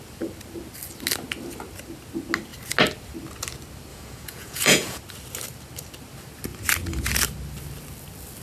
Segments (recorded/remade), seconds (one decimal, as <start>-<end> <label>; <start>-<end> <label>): 0.0-3.9 recorded; 3.9-5.0 remade; 5.0-8.4 recorded